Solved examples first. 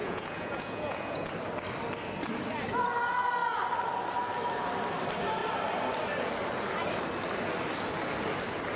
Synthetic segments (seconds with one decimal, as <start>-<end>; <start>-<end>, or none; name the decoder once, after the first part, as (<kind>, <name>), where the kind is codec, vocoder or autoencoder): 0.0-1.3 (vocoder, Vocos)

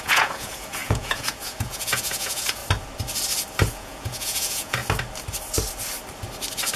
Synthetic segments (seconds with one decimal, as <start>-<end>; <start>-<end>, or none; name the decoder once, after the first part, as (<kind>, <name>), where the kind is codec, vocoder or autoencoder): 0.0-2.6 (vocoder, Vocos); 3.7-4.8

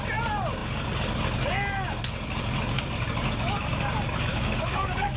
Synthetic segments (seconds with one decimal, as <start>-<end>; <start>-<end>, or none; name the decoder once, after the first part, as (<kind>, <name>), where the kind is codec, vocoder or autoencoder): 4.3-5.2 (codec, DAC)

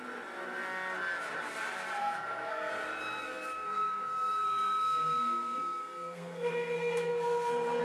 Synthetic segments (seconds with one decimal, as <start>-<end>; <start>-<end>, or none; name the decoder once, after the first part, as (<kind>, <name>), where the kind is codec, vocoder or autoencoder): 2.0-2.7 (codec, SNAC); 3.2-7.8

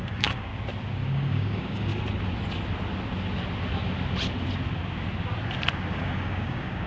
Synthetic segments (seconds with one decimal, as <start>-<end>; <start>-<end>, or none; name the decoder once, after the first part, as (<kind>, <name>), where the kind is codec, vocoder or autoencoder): 0.0-0.5 (codec, DAC); 1.1-1.9; 5.9-6.9

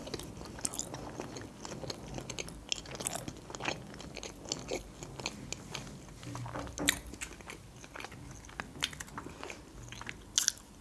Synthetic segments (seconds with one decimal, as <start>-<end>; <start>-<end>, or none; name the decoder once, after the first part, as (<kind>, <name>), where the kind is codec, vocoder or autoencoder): none